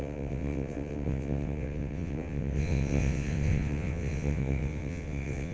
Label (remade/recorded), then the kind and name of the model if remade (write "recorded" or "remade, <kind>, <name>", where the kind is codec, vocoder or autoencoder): remade, vocoder, WaveNeXt